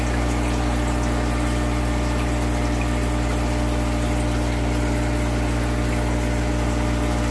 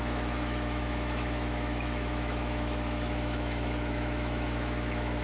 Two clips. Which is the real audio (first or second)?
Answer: first